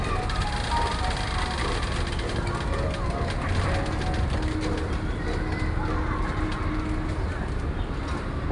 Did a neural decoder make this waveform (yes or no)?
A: no